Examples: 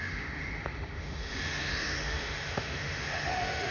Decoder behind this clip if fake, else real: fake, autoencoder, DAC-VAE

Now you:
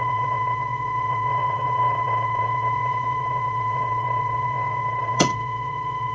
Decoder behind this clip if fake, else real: fake, vocoder, WaveNeXt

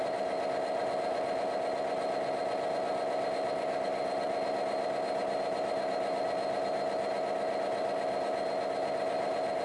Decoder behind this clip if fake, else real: real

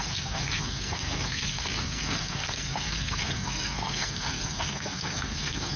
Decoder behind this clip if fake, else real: fake, codec, SNAC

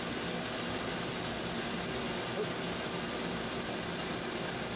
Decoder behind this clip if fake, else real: real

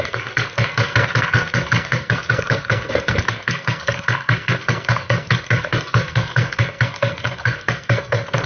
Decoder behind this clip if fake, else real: fake, codec, SNAC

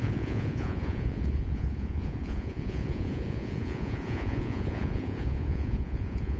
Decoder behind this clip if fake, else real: fake, vocoder, Vocos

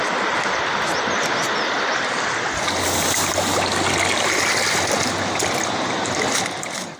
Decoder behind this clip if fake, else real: real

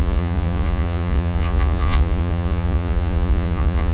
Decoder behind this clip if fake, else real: fake, vocoder, Vocos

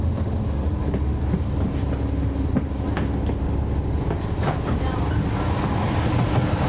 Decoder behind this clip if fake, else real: real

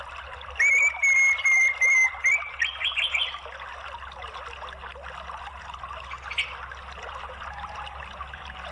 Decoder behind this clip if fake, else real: real